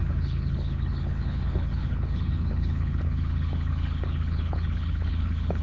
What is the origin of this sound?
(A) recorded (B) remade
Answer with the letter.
B